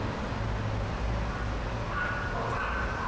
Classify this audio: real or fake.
real